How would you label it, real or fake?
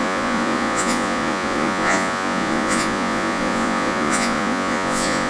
fake